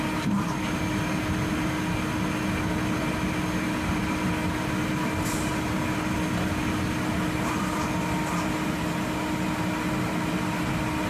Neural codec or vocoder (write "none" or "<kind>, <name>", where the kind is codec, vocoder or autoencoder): none